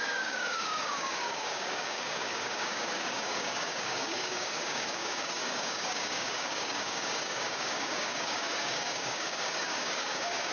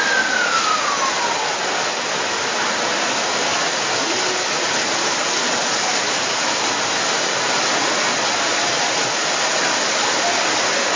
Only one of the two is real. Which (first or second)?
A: second